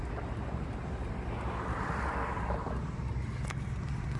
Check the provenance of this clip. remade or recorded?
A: recorded